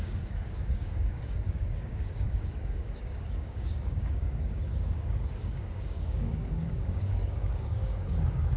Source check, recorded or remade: remade